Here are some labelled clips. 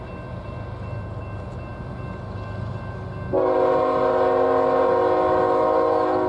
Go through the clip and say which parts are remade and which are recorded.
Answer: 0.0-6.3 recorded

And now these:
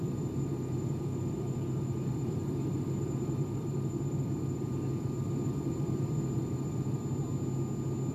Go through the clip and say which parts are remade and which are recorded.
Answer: 0.0-7.0 remade; 7.0-8.1 recorded